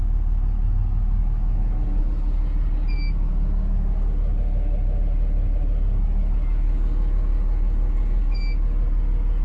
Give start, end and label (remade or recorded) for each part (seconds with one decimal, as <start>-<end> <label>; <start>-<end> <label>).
0.0-1.2 recorded; 1.2-2.0 remade; 2.0-9.4 recorded